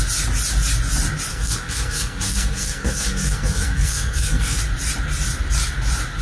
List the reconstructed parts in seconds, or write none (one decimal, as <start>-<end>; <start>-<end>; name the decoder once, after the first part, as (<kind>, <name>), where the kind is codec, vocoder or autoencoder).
1.3-4.6 (codec, SNAC)